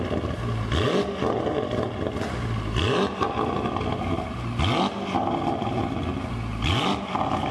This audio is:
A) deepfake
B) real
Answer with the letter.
B